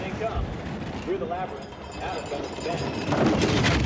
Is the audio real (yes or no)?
yes